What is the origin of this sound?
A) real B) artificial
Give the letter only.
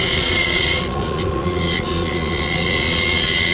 B